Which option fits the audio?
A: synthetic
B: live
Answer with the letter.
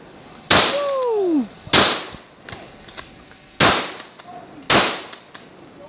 B